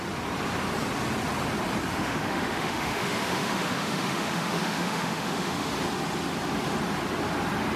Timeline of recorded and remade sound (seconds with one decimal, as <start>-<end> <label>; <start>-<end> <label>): 0.0-1.9 recorded; 1.9-5.7 remade; 5.7-7.8 recorded